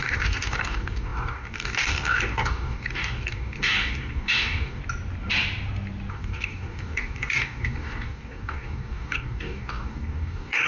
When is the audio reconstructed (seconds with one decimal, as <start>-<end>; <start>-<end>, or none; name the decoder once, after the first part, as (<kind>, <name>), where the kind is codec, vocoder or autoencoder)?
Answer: 0.0-4.8 (codec, DAC); 6.1-10.7